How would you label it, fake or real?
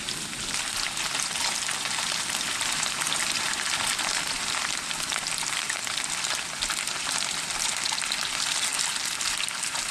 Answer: real